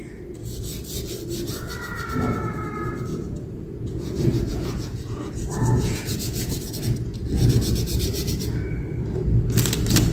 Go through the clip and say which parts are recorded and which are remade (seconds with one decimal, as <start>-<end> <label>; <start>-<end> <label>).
0.0-3.1 recorded; 3.1-6.7 remade; 6.7-10.1 recorded